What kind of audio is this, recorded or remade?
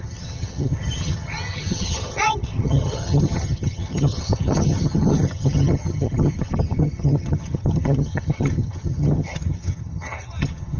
remade